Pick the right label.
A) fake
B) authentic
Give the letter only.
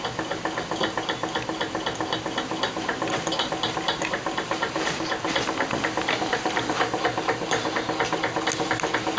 B